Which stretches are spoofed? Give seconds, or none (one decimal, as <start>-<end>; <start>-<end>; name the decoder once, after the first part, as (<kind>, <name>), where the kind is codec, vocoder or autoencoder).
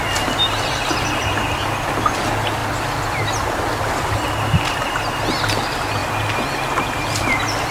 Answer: none